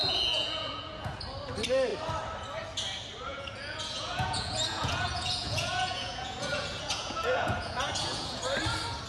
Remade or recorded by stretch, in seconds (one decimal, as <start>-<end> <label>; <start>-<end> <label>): 0.0-1.2 remade; 1.2-3.3 recorded; 3.3-8.4 remade; 8.4-9.1 recorded